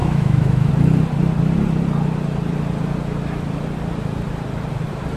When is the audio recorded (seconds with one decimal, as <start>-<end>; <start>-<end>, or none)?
0.7-5.2